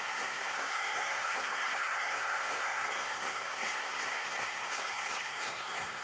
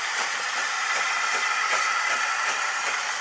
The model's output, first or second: first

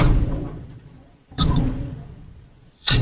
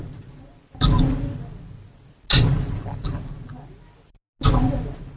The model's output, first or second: first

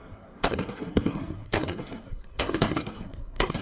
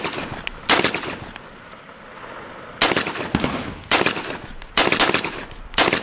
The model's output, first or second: first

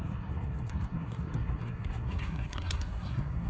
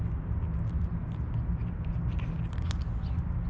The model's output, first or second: first